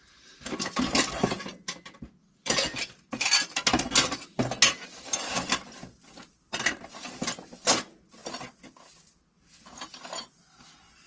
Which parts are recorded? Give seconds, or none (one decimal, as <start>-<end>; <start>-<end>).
0.0-11.1